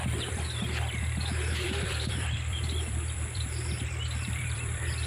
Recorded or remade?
remade